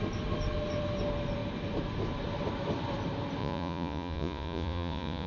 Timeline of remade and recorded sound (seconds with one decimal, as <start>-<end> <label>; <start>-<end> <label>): 0.0-3.4 recorded; 3.4-5.3 remade